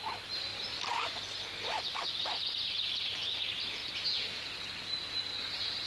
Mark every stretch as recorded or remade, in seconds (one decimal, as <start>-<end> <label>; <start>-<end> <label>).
0.0-0.5 recorded; 0.5-1.2 remade; 1.2-5.9 recorded